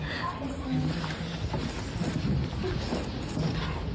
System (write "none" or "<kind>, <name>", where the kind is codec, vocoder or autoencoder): none